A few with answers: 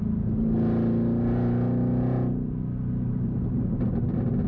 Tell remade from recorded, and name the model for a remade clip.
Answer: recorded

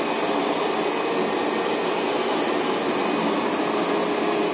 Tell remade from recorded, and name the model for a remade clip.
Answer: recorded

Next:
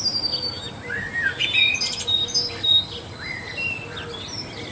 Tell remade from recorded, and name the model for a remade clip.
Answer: recorded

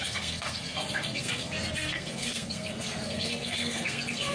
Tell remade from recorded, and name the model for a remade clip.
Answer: remade, codec, SNAC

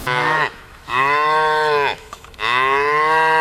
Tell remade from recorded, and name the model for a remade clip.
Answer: remade, autoencoder, DAC-VAE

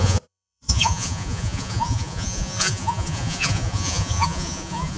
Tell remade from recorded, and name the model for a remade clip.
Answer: remade, vocoder, Vocos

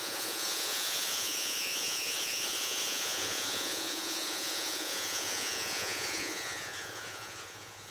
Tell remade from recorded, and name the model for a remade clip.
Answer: remade, vocoder, Vocos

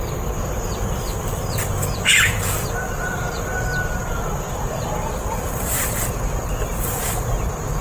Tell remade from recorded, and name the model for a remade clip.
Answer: remade, vocoder, BigVGAN v2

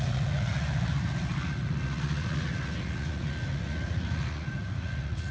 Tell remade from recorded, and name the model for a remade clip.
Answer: remade, vocoder, Vocos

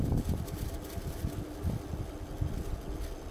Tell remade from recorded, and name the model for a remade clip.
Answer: recorded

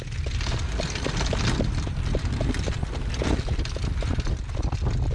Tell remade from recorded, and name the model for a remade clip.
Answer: recorded